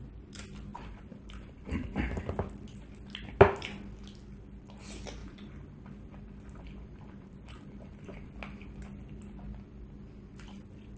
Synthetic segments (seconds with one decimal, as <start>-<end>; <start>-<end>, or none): 0.7-2.3; 5.2-8.3